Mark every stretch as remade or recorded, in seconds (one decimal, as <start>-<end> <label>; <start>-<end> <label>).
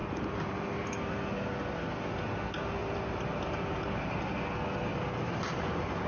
0.0-0.9 remade; 0.9-2.8 recorded; 2.8-4.4 remade; 4.4-4.9 recorded; 4.9-6.1 remade